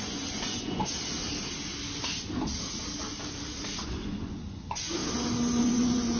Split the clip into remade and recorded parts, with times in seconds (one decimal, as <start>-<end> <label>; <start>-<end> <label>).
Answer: 0.0-0.8 remade; 0.8-3.9 recorded; 3.9-5.0 remade; 5.0-5.6 recorded; 5.6-6.2 remade